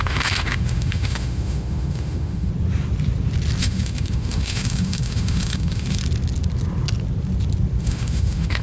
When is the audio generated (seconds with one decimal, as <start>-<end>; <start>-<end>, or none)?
0.0-2.5; 3.6-6.0; 7.8-8.6